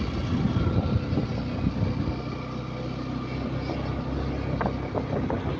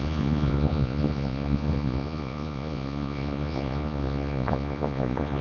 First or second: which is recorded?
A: first